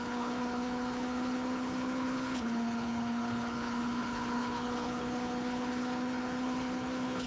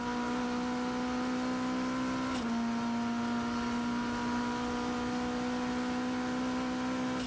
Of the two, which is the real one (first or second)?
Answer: second